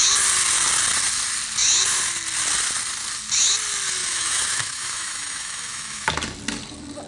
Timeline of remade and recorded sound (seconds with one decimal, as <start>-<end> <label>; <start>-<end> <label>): 0.0-4.0 recorded; 4.0-6.1 remade; 6.1-7.1 recorded